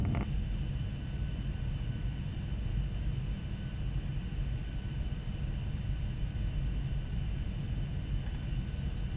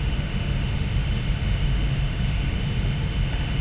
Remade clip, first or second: second